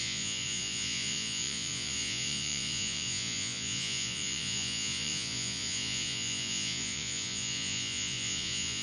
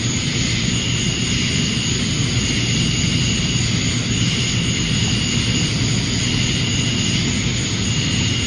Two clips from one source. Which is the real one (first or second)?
second